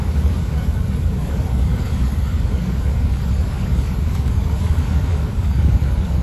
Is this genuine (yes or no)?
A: no